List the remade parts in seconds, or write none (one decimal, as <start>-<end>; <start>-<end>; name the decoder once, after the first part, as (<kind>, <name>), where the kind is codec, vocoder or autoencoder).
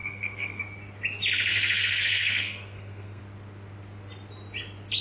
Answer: 0.0-0.6 (codec, SNAC); 1.5-3.2